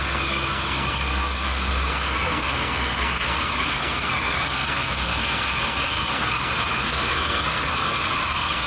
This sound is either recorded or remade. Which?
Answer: remade